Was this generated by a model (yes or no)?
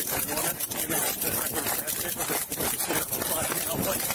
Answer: no